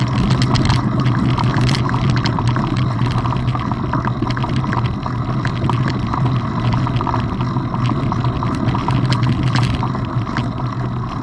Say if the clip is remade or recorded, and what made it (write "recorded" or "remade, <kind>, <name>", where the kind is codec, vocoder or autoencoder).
recorded